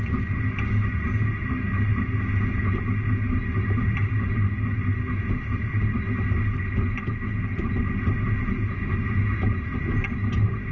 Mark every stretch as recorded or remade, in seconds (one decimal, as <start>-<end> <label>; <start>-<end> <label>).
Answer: 0.0-10.7 recorded